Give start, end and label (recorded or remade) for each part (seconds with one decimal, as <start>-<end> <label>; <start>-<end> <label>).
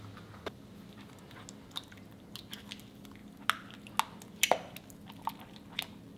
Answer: 0.0-6.2 recorded